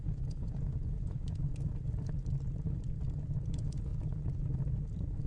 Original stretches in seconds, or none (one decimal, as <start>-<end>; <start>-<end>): 1.5-3.5; 3.9-5.3